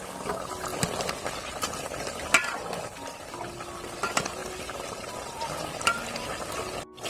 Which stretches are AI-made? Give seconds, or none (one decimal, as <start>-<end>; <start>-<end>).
0.7-3.2; 4.4-5.8